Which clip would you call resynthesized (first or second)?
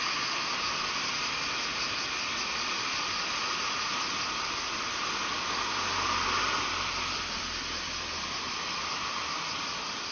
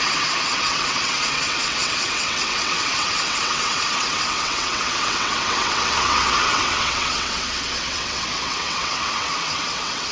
second